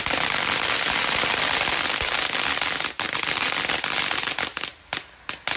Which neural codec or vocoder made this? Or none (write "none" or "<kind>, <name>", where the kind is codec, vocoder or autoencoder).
none